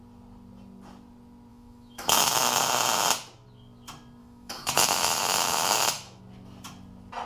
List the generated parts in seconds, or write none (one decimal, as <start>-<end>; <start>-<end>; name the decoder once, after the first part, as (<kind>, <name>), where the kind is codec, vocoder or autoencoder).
1.5-2.7 (autoencoder, DAC-VAE); 4.2-6.2